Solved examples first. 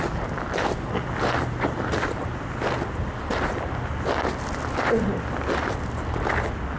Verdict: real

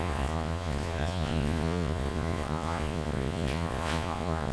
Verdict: fake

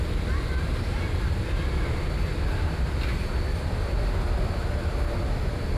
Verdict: real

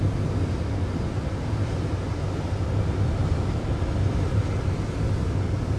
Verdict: real